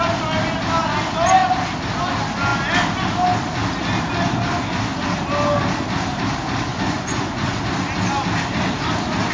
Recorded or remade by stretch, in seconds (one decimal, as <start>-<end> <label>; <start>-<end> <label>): 0.0-6.7 recorded; 6.7-7.6 remade; 7.6-9.3 recorded

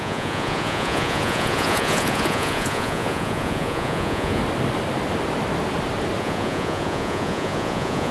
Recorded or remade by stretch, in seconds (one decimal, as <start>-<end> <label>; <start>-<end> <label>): 0.0-4.4 remade; 4.4-6.2 recorded; 6.2-8.1 remade

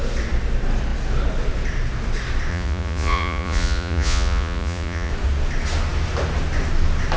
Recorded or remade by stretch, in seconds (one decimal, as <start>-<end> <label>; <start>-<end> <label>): 0.0-2.5 recorded; 2.5-5.1 remade; 5.1-7.2 recorded

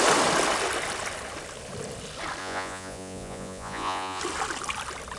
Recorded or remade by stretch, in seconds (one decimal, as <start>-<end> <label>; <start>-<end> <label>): 0.0-2.4 recorded; 2.4-4.2 remade; 4.2-5.2 recorded